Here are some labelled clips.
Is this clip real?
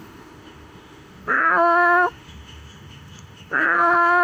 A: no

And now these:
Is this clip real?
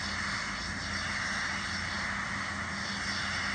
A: yes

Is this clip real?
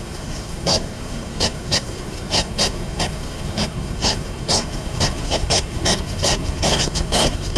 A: no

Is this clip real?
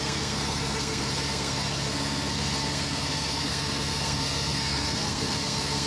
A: no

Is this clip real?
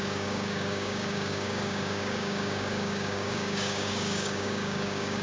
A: no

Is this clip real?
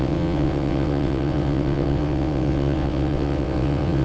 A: no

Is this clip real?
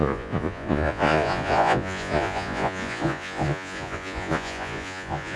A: no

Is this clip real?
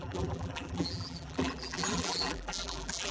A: no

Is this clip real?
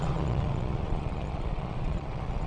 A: no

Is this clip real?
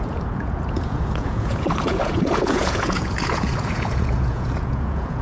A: no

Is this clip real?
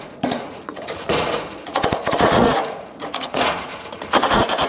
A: no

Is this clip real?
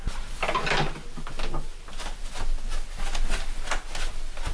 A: yes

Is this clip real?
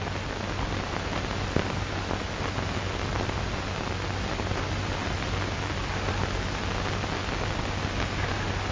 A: yes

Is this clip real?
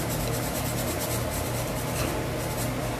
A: yes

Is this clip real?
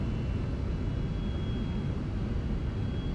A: yes